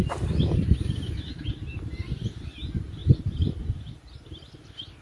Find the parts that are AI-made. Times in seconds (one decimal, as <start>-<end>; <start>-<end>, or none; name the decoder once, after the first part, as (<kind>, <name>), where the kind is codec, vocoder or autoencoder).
none